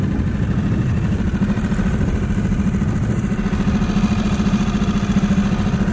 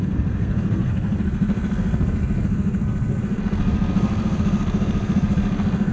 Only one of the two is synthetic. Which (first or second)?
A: second